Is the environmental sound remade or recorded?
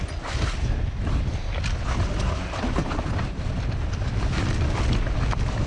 recorded